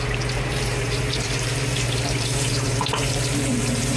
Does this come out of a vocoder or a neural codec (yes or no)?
yes